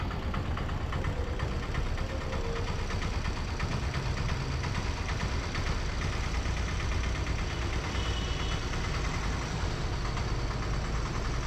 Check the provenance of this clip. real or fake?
real